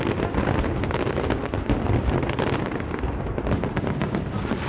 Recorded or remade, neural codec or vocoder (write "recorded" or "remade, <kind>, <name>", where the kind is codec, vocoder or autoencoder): recorded